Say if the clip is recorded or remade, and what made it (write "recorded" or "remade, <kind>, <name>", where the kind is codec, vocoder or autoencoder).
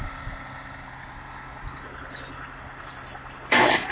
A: recorded